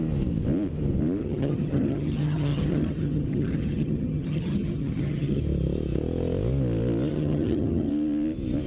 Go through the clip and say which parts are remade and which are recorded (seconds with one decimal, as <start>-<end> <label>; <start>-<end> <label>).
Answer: 0.0-1.2 recorded; 1.2-5.4 remade; 5.4-7.1 recorded; 7.1-7.9 remade; 7.9-8.7 recorded